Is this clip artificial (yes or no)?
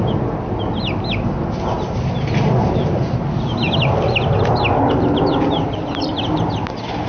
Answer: no